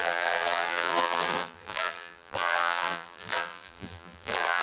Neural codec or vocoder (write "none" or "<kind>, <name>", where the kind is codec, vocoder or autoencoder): vocoder, BigVGAN v2